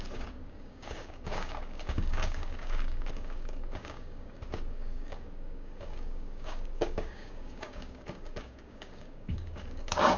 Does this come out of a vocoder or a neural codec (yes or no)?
yes